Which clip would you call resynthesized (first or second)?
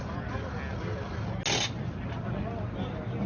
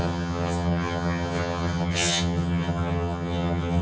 second